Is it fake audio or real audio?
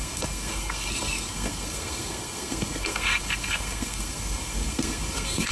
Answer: fake